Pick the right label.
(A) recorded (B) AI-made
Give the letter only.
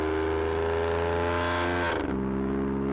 A